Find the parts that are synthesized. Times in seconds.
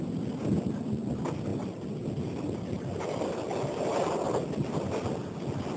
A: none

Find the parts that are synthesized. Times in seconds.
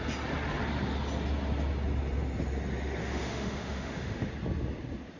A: 3.0-4.3 (autoencoder, DAC-VAE)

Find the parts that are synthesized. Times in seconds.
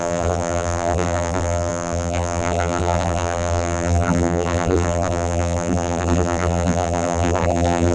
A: 0.0-7.9 (vocoder, BigVGAN v2)